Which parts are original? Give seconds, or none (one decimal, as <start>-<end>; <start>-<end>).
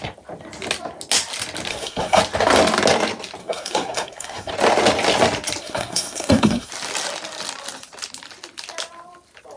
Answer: 0.0-1.7; 2.2-3.4; 4.5-5.6; 6.7-9.6